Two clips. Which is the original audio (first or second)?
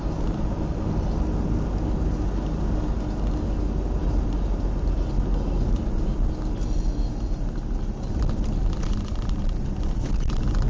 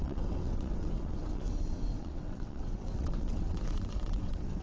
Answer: first